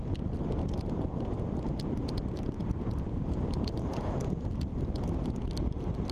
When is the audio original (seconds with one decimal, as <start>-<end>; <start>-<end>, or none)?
0.0-0.6; 4.3-6.1